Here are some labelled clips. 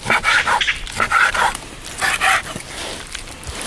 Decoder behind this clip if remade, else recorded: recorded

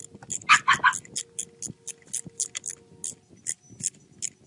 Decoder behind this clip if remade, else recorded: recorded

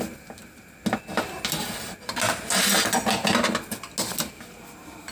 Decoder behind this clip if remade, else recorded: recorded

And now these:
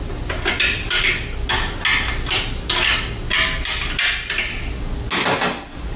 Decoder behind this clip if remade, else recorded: recorded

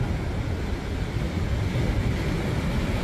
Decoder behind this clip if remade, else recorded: recorded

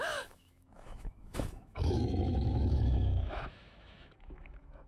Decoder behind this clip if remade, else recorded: remade, autoencoder, DAC-VAE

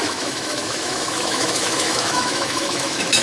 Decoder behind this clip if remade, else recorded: remade, autoencoder, DAC-VAE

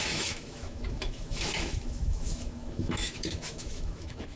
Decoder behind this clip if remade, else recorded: remade, autoencoder, DAC-VAE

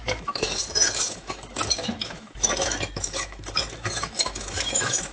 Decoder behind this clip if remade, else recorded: remade, autoencoder, DAC-VAE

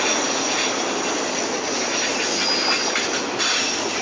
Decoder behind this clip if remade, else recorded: recorded